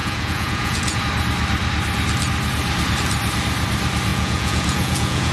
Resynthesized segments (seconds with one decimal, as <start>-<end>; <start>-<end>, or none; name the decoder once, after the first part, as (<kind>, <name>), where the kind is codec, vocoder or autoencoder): 0.0-1.0 (vocoder, Vocos); 4.1-5.3